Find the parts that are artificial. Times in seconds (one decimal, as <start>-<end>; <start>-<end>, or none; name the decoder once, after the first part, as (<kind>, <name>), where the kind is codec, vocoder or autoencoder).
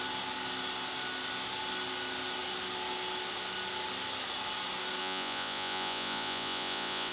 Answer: 5.0-7.1 (vocoder, Vocos)